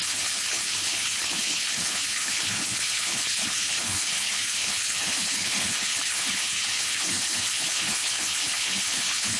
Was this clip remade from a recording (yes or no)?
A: yes